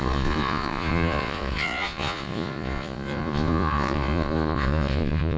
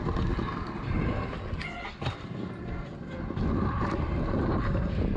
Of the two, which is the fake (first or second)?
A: first